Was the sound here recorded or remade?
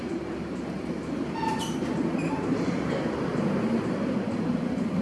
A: remade